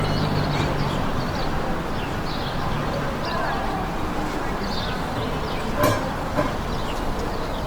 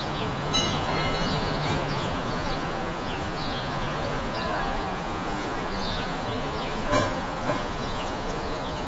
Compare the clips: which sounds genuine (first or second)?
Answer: first